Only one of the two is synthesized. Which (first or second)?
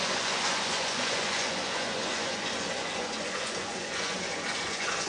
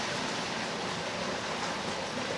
first